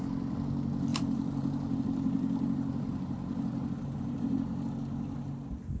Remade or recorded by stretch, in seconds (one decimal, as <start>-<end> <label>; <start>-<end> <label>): 0.0-0.9 recorded; 0.9-4.4 remade; 4.4-5.8 recorded